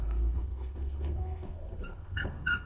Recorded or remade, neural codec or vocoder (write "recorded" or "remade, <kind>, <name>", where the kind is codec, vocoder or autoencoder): remade, codec, SNAC